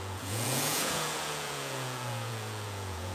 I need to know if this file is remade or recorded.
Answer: remade